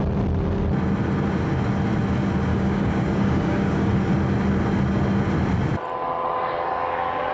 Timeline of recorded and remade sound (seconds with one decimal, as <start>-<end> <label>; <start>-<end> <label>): 0.0-2.5 recorded; 2.5-3.9 remade; 3.9-7.3 recorded